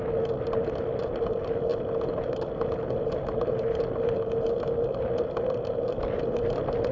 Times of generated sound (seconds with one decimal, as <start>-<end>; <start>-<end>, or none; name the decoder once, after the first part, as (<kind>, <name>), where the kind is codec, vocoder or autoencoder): none